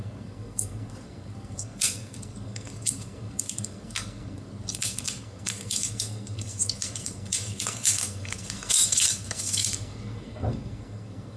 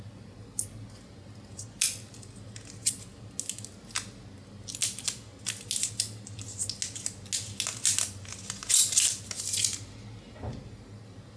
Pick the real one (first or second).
second